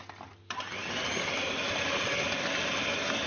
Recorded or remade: recorded